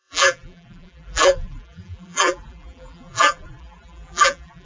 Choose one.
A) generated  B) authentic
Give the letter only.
A